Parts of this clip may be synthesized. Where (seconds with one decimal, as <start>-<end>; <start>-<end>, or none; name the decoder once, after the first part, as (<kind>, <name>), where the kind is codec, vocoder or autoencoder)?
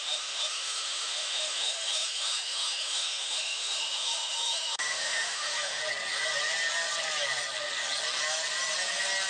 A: 0.0-5.8 (autoencoder, DAC-VAE)